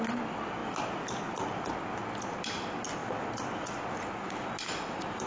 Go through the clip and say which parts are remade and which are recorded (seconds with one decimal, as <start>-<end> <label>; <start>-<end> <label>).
0.0-5.3 recorded